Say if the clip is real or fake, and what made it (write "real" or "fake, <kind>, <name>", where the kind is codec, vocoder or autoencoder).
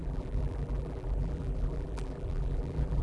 fake, vocoder, BigVGAN v2